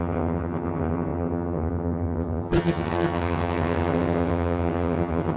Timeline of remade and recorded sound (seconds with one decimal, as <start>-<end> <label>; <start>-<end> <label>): 0.0-5.4 remade